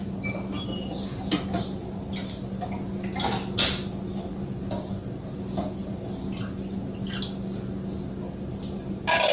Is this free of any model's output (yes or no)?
yes